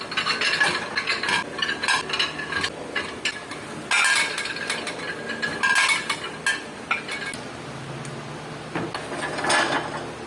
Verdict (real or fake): real